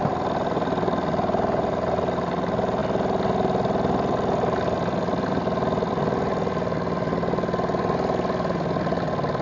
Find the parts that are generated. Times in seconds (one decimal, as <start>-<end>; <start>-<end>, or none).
none